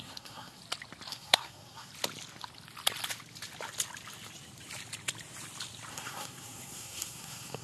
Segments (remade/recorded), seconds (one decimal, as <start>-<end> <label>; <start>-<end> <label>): 0.0-0.6 remade; 0.6-1.1 recorded; 1.1-1.9 remade; 1.9-5.9 recorded; 5.9-7.6 remade

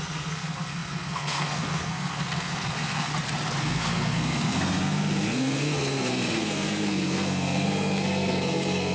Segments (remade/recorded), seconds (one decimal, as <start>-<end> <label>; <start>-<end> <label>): 0.0-3.1 remade; 3.1-3.6 recorded; 3.6-8.9 remade

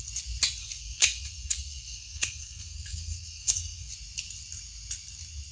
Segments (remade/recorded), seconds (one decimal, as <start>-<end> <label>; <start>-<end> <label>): 0.0-0.6 recorded; 0.6-3.9 remade; 3.9-5.5 recorded

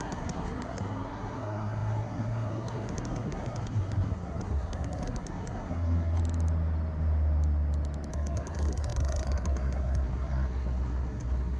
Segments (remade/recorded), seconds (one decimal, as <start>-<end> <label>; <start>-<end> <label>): 0.0-6.2 remade; 6.2-8.1 recorded; 8.1-11.6 remade

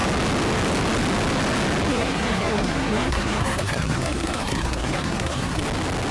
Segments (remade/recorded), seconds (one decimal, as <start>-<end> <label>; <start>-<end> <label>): 0.0-1.9 recorded; 1.9-5.6 remade; 5.6-6.1 recorded

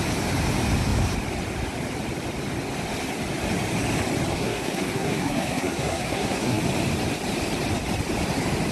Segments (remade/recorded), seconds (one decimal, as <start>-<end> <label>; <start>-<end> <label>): 0.0-4.3 recorded; 4.3-6.6 remade; 6.6-8.7 recorded

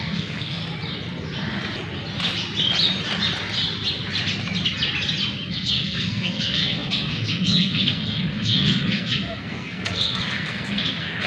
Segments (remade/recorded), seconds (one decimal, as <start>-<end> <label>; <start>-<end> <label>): 0.0-0.6 remade; 0.6-5.5 recorded; 5.5-11.3 remade